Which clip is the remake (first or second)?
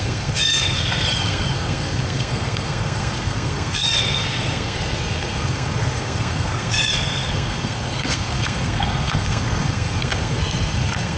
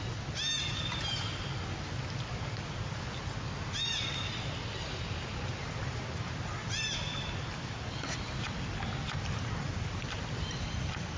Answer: first